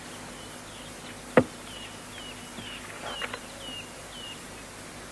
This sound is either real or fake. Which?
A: real